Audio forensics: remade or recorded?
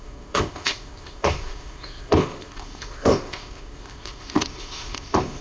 remade